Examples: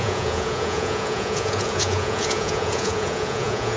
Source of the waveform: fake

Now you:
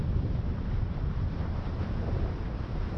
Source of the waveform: fake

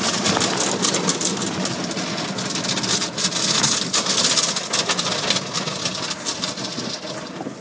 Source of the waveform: real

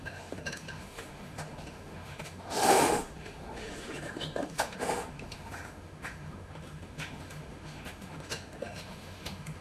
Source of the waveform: fake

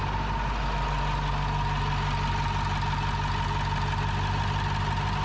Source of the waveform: real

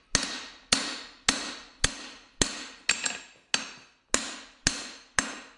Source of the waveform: real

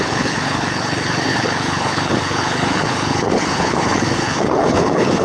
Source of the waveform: fake